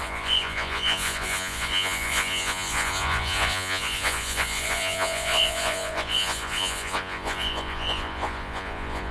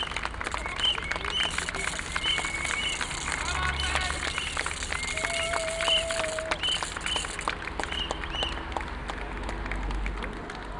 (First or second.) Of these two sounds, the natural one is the second